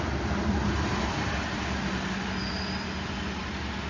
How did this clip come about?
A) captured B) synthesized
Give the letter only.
A